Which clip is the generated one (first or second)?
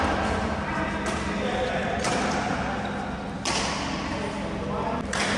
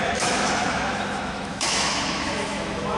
second